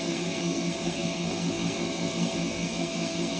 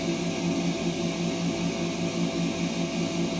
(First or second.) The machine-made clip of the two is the first